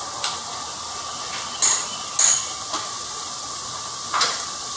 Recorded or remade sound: recorded